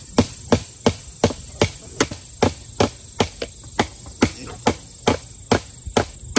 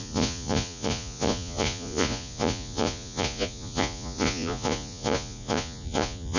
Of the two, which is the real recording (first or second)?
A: first